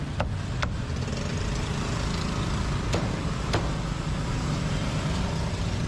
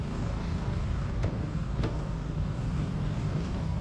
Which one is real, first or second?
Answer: first